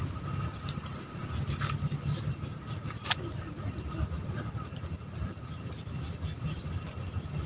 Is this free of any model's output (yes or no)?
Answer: yes